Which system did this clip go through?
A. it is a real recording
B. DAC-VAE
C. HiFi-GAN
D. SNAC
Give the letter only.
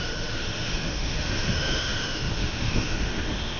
B